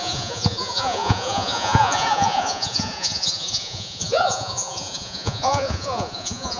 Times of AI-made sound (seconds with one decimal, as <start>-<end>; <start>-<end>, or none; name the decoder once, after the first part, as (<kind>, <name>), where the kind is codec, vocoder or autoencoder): 0.0-6.6 (vocoder, Vocos)